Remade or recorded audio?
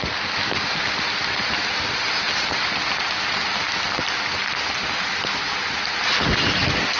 recorded